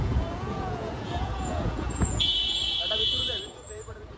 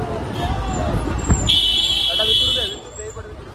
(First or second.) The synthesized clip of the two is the first